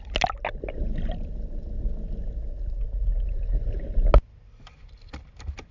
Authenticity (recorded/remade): recorded